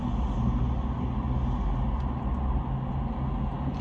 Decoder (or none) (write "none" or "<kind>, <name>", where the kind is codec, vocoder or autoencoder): none